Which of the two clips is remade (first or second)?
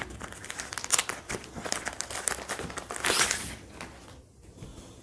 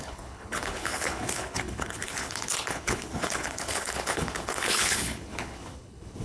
second